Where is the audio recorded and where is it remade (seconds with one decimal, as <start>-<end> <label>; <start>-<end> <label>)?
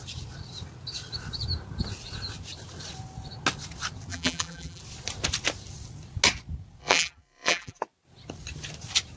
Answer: 0.0-4.1 recorded; 4.1-4.8 remade; 4.8-6.8 recorded; 6.8-7.8 remade; 7.8-9.2 recorded